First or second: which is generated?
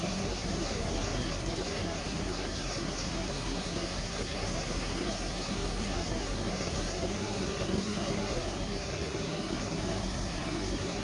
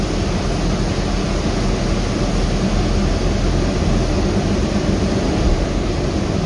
first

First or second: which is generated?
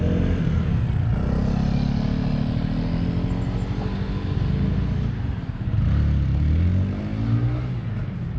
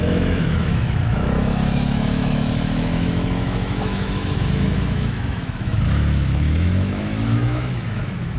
second